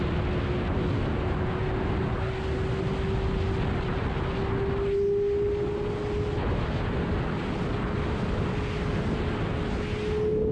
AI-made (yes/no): no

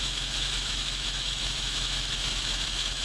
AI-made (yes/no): yes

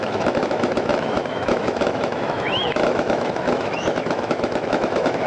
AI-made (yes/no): yes